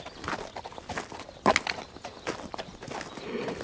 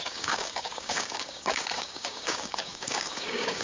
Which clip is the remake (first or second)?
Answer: second